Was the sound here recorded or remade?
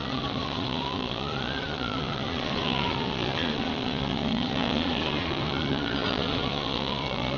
remade